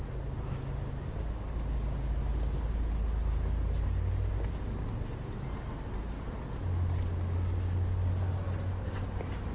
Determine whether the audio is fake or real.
real